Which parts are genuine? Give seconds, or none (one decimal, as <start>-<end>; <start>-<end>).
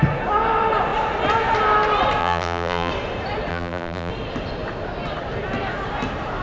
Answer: 0.0-2.2; 2.9-3.5; 4.1-6.4